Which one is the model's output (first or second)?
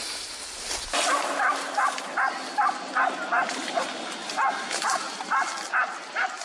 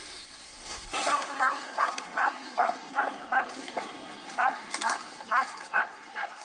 second